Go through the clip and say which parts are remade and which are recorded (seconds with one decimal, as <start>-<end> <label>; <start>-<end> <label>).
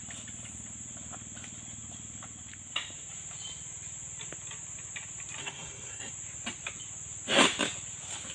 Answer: 0.0-5.4 recorded; 5.4-6.1 remade; 6.1-8.3 recorded